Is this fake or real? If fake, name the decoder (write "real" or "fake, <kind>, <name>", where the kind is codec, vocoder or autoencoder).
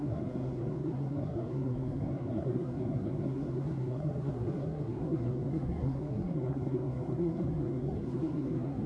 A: fake, codec, SNAC